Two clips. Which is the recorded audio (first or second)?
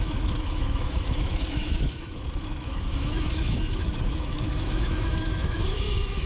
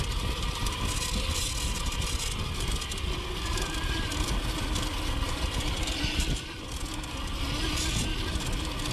second